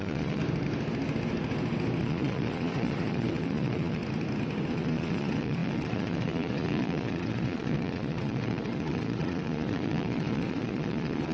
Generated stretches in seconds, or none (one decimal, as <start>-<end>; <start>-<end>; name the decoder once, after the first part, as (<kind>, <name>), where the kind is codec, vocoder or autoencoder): 0.0-0.4 (vocoder, Vocos); 2.0-4.0; 4.7-11.3